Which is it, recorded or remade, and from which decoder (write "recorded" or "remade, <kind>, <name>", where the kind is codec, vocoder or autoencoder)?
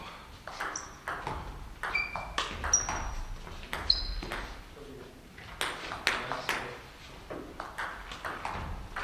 recorded